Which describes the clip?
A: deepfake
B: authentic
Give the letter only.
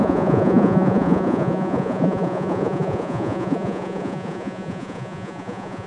A